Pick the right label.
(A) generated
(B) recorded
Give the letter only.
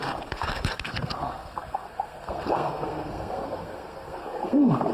A